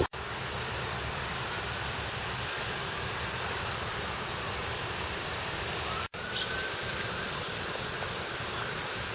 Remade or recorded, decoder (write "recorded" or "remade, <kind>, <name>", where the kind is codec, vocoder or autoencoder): remade, vocoder, BigVGAN v2